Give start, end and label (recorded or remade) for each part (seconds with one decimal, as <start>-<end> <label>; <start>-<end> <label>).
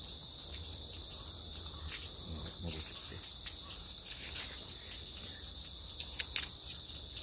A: 0.0-7.2 recorded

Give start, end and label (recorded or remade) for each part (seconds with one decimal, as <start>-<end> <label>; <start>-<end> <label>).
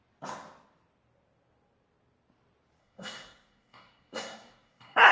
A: 0.0-2.8 recorded; 2.8-5.1 remade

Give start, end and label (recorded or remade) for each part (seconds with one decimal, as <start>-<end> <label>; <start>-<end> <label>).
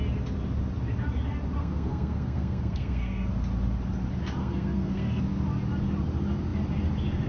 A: 0.0-1.6 recorded; 1.6-3.3 remade; 3.3-4.4 recorded; 4.4-5.2 remade; 5.2-7.3 recorded